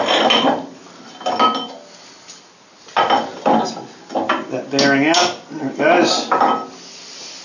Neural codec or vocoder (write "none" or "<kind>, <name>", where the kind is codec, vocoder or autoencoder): none